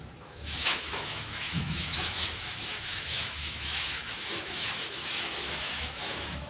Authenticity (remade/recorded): remade